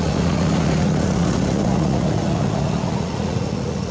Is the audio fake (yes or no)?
yes